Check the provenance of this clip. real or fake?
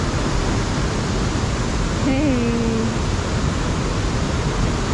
real